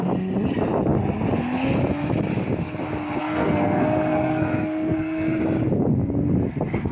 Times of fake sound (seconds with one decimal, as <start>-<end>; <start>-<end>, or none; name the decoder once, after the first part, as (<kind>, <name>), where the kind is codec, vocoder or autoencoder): 3.2-5.4 (codec, SNAC)